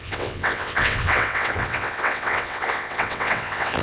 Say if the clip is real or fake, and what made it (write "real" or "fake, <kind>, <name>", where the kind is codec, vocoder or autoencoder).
fake, vocoder, WaveNeXt